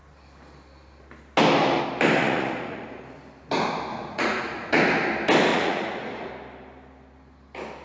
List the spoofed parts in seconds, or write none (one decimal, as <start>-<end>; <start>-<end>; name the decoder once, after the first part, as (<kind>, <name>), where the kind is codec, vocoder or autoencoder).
2.2-3.0 (vocoder, Vocos); 3.9-4.8; 5.5-6.3